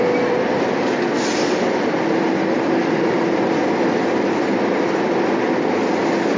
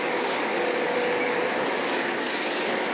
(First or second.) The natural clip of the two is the first